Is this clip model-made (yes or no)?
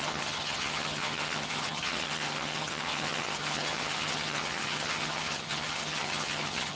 yes